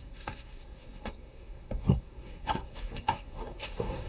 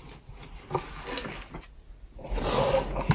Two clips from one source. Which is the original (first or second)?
second